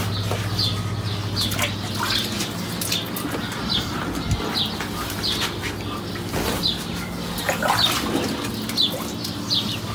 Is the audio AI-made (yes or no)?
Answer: no